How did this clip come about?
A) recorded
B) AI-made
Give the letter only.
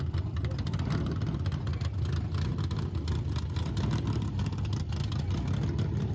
A